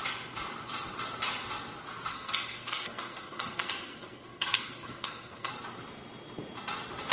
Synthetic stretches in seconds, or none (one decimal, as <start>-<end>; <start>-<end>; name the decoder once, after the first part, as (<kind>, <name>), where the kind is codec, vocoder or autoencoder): 2.1-5.5 (codec, SNAC)

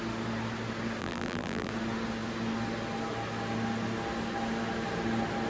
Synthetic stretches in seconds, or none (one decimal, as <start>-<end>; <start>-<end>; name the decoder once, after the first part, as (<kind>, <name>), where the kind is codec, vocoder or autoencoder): 1.0-1.7 (vocoder, BigVGAN v2)

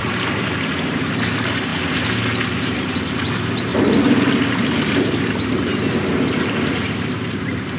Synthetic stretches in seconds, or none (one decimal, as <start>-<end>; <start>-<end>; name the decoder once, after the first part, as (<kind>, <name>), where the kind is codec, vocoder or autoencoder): 0.0-1.7 (vocoder, BigVGAN v2); 2.6-3.7; 5.0-5.7; 7.3-7.8

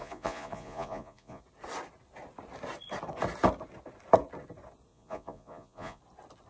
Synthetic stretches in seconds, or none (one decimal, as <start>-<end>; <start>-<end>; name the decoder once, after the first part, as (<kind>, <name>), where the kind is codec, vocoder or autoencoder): 0.0-1.4 (vocoder, Vocos); 4.9-6.0